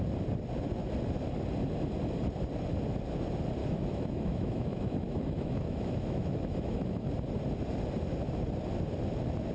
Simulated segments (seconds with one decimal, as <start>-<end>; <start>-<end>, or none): 3.6-7.1